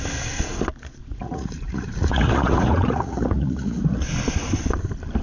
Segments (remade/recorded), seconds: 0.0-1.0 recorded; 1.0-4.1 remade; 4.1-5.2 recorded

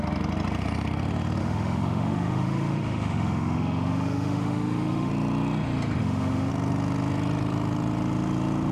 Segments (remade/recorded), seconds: 0.0-1.4 recorded; 1.4-5.1 remade; 5.1-6.0 recorded; 6.0-6.5 remade; 6.5-8.7 recorded

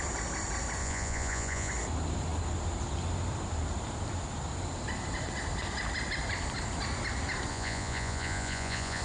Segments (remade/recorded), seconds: 0.0-0.8 recorded; 0.8-1.7 remade; 1.7-7.5 recorded; 7.5-9.0 remade

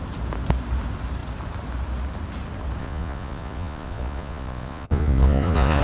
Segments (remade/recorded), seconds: 0.0-2.8 recorded; 2.8-5.8 remade

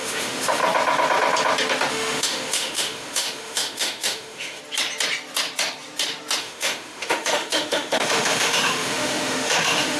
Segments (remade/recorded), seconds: 0.0-0.6 remade; 0.6-1.9 recorded; 1.9-4.6 remade; 4.6-6.4 recorded; 6.4-10.0 remade

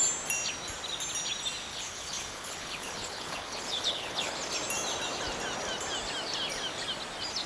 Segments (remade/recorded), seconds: 0.0-1.7 recorded; 1.7-4.3 remade; 4.3-7.5 recorded